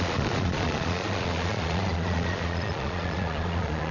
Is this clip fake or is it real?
fake